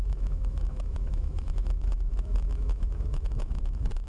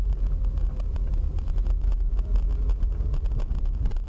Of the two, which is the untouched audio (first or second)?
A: second